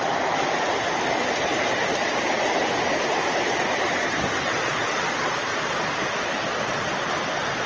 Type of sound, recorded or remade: recorded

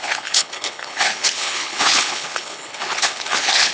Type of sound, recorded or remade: remade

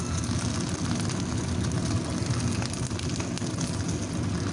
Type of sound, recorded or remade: recorded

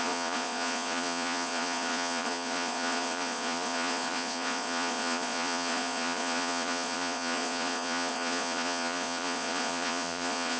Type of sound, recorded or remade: remade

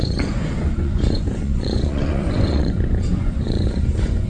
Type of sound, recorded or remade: remade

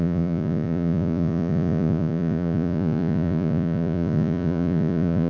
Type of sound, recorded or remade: remade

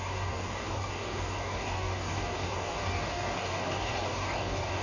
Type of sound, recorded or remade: remade